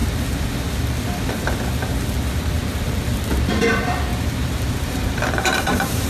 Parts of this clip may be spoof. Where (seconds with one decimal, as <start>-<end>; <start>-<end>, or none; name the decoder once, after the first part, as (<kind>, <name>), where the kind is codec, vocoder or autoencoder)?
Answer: 4.1-6.1 (vocoder, BigVGAN v2)